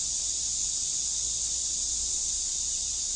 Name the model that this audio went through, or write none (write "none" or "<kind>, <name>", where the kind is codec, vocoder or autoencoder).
none